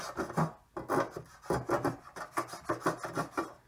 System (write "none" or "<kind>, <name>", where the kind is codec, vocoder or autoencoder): none